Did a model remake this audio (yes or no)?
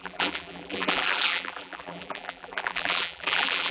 yes